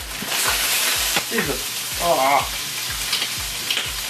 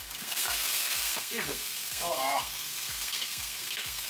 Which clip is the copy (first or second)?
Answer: second